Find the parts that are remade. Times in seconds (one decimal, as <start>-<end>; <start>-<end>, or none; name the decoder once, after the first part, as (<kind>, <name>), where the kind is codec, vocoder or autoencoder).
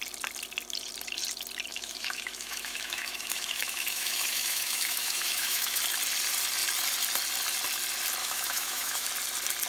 1.7-5.8 (autoencoder, DAC-VAE); 8.2-9.1